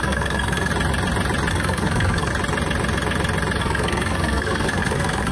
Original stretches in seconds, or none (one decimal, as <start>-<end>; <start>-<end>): 0.7-1.5; 2.3-3.6